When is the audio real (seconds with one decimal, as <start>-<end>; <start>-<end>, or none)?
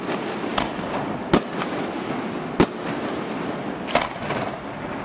0.0-5.0